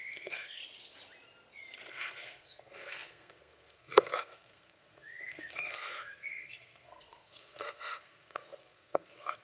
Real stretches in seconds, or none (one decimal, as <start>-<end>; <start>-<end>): 0.6-1.9

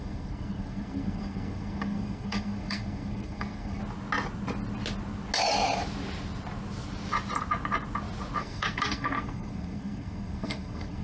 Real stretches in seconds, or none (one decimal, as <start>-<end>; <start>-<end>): 3.8-8.4

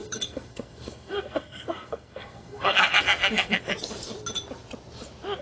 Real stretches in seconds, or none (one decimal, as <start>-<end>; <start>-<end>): 3.7-5.4

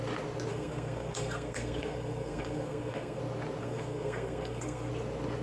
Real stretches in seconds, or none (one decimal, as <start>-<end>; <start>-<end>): 0.0-0.5; 3.2-3.6; 4.9-5.4

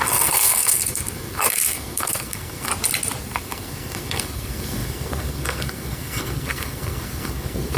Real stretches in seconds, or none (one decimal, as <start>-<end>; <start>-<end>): 2.7-3.2